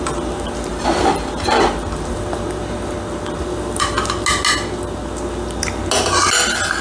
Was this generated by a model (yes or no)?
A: no